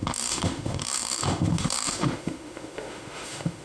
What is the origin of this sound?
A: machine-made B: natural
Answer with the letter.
A